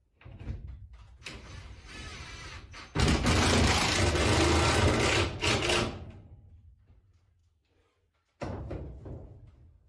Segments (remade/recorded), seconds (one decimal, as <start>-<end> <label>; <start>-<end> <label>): 0.0-7.4 recorded; 7.4-8.6 remade; 8.6-9.9 recorded